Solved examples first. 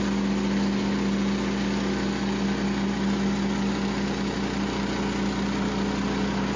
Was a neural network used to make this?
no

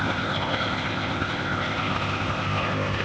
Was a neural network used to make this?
yes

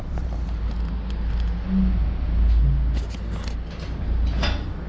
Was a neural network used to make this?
no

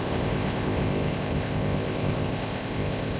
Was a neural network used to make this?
yes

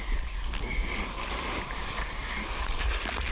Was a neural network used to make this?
no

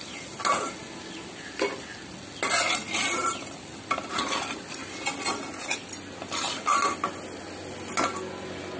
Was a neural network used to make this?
no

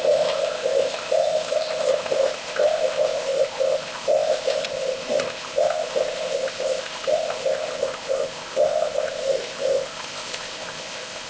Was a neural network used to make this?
yes